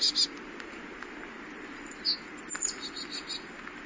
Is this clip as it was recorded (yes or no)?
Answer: yes